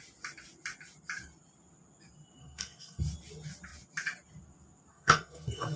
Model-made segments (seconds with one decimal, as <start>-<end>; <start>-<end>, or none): 2.4-3.0; 4.9-5.8